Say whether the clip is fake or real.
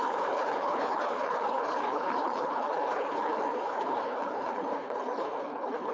fake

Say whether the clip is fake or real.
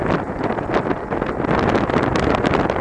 real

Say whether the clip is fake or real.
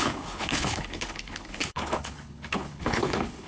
fake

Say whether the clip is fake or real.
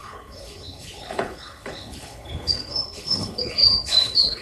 fake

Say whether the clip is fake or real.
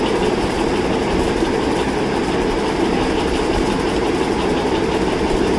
real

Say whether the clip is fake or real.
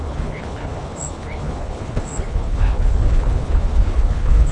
fake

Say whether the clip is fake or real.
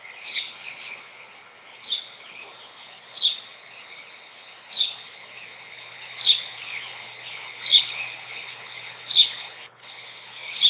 fake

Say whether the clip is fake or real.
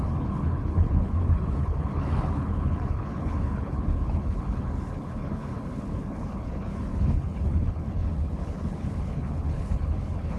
fake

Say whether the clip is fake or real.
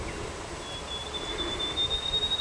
real